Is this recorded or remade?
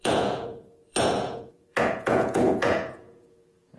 remade